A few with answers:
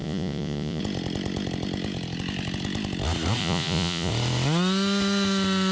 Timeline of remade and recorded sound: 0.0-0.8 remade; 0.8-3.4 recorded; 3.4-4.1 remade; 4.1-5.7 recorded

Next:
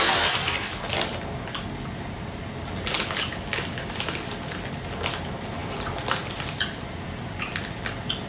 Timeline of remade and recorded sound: 0.0-8.3 recorded

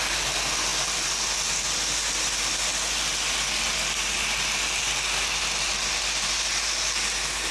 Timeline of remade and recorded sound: 0.0-7.5 recorded

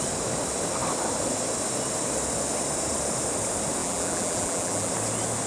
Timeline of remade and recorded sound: 0.0-3.8 recorded; 3.8-4.9 remade; 4.9-5.5 recorded